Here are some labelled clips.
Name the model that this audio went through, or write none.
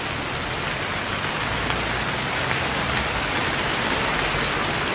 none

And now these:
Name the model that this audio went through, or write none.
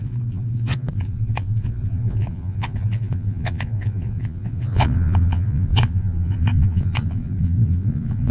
vocoder, Vocos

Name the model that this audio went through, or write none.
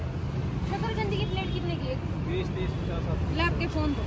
none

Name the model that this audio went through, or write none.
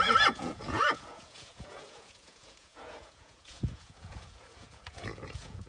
vocoder, Vocos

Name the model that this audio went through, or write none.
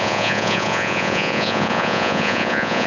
vocoder, Vocos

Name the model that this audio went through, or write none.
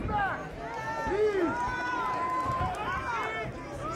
none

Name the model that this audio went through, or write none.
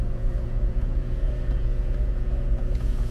vocoder, Vocos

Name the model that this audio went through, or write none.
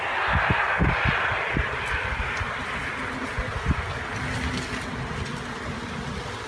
none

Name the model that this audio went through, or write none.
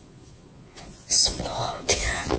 vocoder, Vocos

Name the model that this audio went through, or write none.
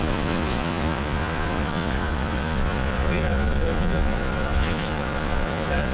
vocoder, Vocos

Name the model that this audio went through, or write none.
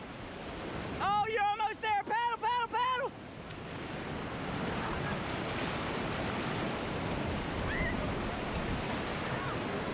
none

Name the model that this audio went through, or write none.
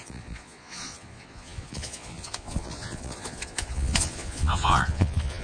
vocoder, Vocos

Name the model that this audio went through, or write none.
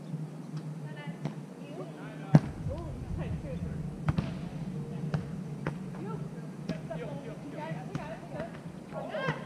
none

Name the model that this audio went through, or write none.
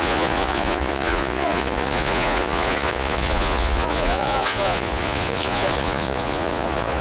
vocoder, Vocos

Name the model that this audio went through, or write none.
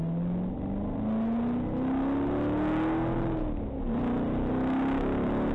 none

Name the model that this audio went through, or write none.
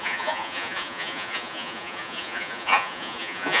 vocoder, Vocos